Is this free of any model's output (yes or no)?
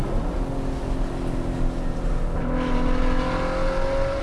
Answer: yes